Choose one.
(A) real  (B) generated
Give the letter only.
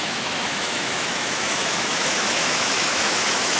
B